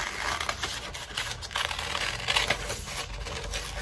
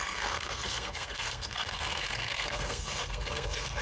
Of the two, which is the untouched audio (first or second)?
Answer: first